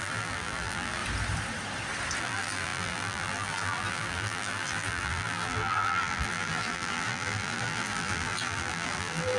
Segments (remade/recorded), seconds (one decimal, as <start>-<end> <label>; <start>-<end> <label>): 0.0-1.0 remade; 1.0-2.2 recorded; 2.2-9.4 remade